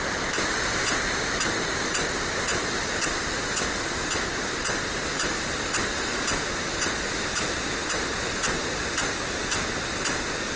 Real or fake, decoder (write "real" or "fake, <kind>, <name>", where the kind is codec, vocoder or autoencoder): real